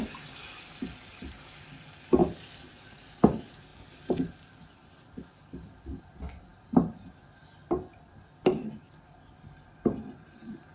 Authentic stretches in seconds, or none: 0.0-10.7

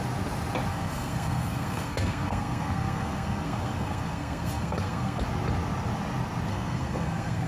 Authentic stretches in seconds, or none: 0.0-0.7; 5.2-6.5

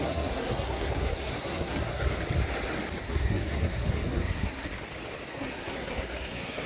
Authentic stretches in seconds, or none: 2.2-3.0; 4.7-5.3

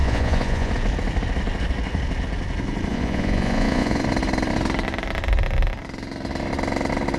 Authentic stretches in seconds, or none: 0.7-2.9; 4.0-7.2

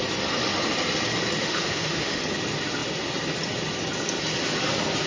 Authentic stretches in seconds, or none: 0.0-1.4; 2.2-5.1